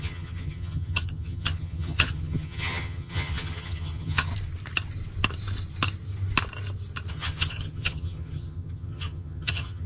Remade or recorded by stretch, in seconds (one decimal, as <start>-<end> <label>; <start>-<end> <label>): 0.0-4.3 remade; 4.3-7.1 recorded; 7.1-9.9 remade